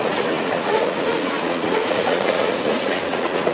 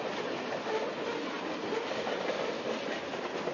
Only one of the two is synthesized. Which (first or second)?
first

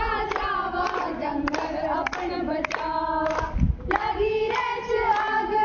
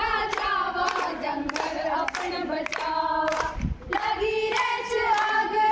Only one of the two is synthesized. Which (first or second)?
second